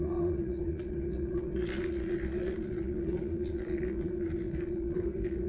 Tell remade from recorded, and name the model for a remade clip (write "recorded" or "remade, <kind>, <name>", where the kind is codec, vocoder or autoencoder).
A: remade, vocoder, Vocos